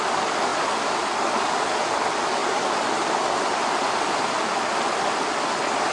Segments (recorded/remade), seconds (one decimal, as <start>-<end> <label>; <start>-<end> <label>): 0.0-5.9 recorded